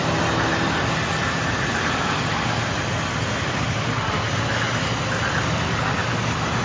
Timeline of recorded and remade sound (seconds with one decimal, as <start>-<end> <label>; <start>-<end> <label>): 0.0-6.6 recorded